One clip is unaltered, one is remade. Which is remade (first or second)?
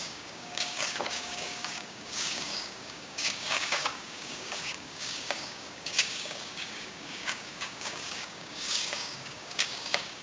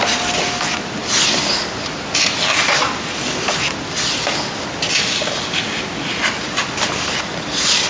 first